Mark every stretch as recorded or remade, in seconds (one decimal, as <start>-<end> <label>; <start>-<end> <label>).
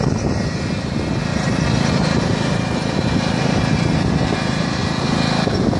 0.0-1.3 recorded; 1.3-4.8 remade; 4.8-5.8 recorded